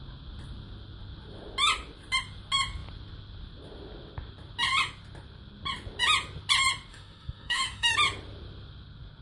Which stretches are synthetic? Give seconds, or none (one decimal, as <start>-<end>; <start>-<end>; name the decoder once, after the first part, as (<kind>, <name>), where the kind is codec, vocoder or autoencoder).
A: 6.9-7.9 (autoencoder, DAC-VAE)